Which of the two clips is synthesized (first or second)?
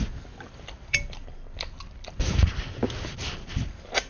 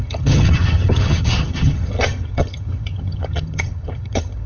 second